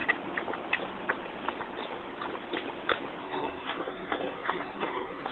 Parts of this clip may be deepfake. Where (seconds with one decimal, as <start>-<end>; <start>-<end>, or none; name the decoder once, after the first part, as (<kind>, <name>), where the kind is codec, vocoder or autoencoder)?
3.2-5.3 (codec, SNAC)